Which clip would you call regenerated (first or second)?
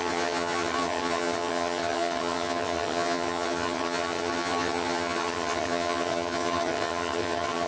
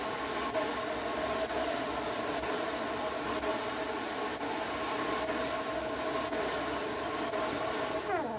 first